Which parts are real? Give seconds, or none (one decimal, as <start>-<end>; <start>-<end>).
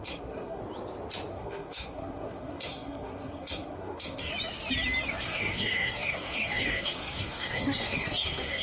0.6-1.3; 4.3-5.2